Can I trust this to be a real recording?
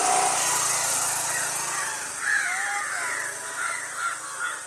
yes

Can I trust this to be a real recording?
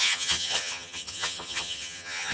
no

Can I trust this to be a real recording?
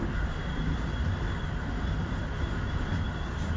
yes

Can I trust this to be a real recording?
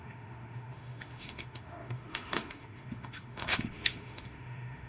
no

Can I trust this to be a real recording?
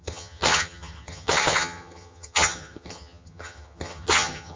no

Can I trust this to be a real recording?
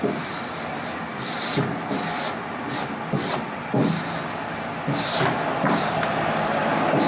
yes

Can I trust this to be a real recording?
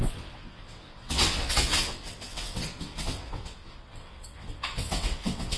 no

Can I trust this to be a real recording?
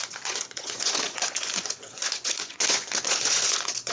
no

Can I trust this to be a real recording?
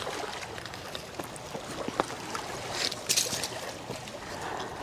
yes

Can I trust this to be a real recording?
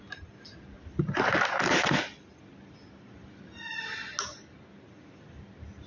yes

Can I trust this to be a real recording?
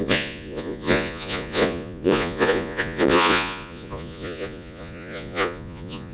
no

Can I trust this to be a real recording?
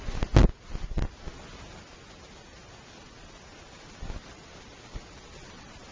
yes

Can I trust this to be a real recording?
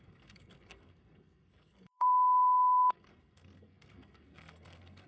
no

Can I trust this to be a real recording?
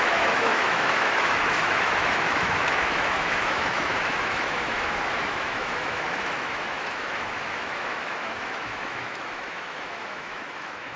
no